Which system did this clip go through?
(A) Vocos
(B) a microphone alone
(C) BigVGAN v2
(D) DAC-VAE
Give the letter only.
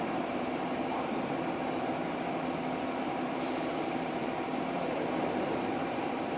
C